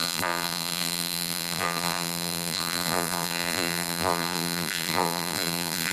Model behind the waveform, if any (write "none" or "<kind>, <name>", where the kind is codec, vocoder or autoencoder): vocoder, BigVGAN v2